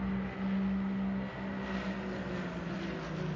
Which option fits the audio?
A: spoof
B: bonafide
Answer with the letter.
B